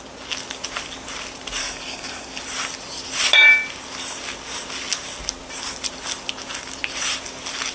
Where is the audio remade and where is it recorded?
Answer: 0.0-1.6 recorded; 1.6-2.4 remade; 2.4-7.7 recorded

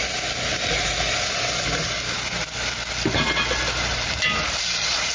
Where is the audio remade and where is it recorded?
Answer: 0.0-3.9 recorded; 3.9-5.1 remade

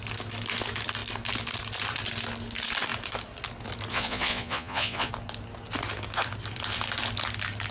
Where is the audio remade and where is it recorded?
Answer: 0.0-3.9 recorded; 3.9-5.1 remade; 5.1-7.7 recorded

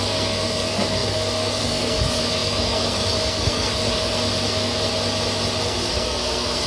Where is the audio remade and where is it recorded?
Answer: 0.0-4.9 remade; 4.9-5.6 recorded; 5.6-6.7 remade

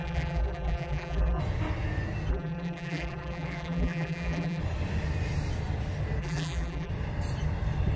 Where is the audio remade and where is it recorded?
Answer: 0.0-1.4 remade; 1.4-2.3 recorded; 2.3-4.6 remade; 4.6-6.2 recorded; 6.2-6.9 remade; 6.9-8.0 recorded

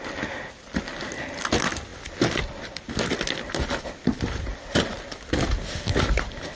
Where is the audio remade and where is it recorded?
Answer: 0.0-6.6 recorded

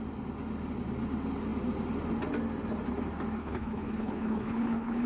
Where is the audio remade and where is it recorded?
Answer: 0.0-3.4 recorded; 3.4-5.1 remade

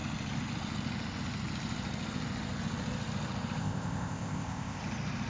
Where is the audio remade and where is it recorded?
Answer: 0.0-3.6 recorded; 3.6-4.8 remade; 4.8-5.3 recorded